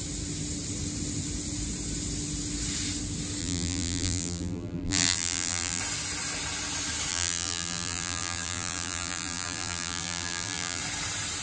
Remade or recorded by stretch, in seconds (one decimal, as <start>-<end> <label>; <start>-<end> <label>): 0.0-3.4 recorded; 3.4-5.8 remade; 5.8-7.1 recorded; 7.1-10.8 remade; 10.8-11.4 recorded